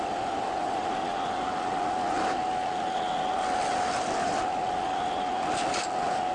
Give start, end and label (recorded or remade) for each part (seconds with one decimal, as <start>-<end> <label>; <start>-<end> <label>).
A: 0.0-6.3 recorded